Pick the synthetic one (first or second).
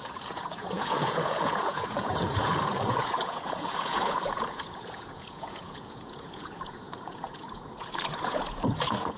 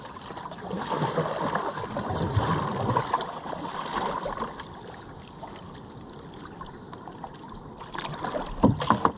first